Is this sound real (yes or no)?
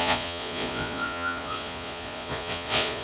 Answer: no